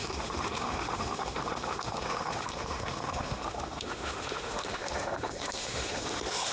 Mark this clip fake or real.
fake